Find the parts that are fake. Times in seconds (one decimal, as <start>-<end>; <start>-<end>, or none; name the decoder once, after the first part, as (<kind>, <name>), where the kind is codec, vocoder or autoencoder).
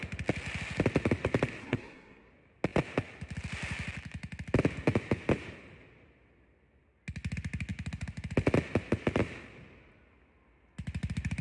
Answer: 1.6-2.3 (codec, SNAC)